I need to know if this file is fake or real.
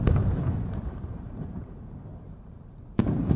fake